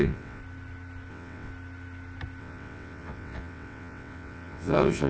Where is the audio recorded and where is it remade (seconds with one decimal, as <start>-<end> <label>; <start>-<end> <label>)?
0.0-0.4 remade; 0.4-1.1 recorded; 1.1-1.5 remade; 1.5-2.4 recorded; 2.4-5.1 remade